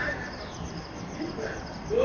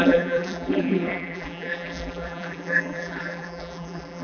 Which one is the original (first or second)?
first